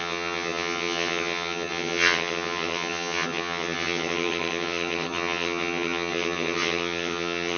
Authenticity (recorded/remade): remade